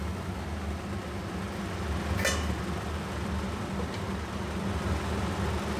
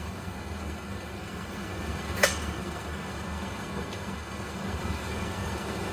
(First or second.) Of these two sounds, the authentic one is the first